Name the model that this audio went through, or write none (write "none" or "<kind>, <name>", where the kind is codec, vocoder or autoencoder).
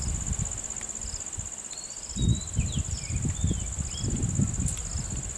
none